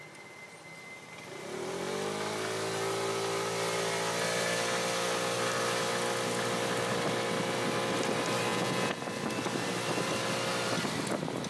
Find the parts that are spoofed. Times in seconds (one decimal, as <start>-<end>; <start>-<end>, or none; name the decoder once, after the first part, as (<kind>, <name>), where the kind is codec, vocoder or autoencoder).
8.5-9.0 (vocoder, Vocos)